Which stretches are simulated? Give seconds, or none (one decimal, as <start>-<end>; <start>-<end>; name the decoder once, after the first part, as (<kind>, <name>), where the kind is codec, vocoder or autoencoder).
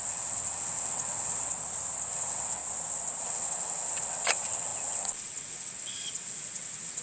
0.0-1.5 (vocoder, WaveNeXt); 2.1-2.6; 3.2-7.0